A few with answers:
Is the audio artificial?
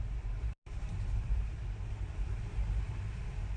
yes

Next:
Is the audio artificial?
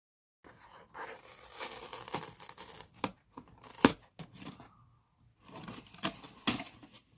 no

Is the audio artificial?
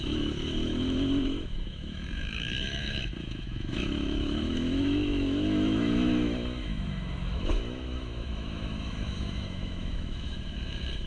yes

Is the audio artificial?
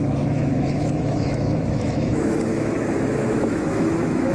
yes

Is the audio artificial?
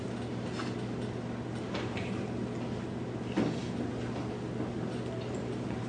no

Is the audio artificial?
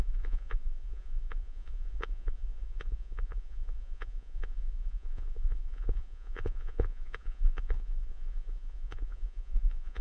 yes